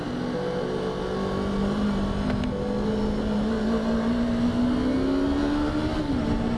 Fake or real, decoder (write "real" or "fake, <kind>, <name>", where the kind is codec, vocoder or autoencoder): real